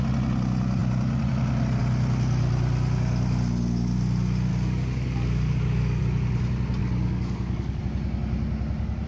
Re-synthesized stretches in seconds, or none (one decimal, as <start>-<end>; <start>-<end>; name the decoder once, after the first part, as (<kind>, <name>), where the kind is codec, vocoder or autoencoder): 4.5-6.0 (codec, DAC); 6.8-7.8